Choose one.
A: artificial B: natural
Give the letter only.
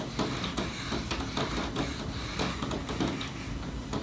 B